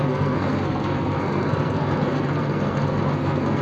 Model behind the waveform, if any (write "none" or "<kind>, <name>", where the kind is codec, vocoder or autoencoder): codec, SNAC